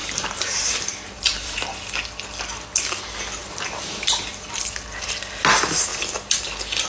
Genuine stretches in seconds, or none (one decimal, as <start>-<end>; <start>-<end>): 1.8-3.4; 4.6-6.9